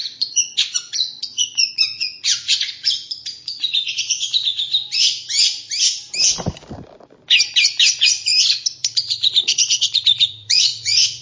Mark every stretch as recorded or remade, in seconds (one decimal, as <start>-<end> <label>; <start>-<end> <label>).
0.0-4.7 remade; 4.7-7.9 recorded; 7.9-8.3 remade; 8.3-8.9 recorded; 8.9-11.2 remade